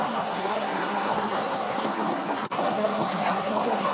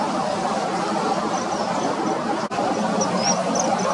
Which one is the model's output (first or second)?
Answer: first